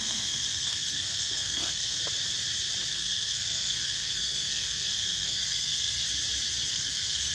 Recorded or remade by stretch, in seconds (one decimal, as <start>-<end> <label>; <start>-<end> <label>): 0.0-2.0 remade; 2.0-2.9 recorded; 2.9-6.0 remade; 6.0-6.7 recorded; 6.7-7.3 remade